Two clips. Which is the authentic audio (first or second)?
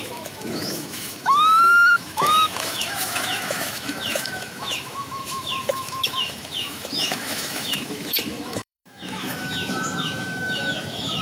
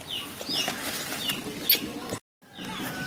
second